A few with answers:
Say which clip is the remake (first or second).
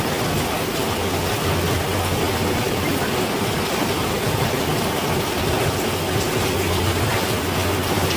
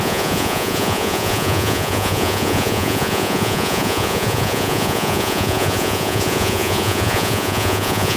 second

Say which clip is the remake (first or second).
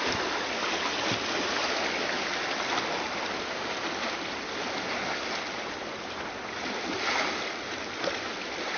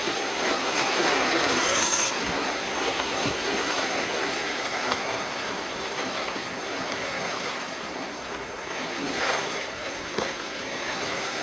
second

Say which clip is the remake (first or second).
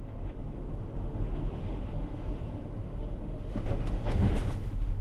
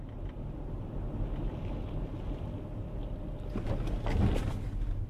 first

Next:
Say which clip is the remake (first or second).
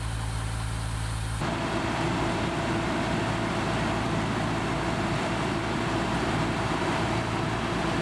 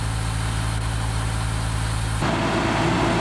first